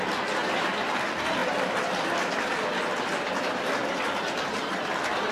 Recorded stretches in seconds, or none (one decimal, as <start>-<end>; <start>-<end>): 0.0-5.3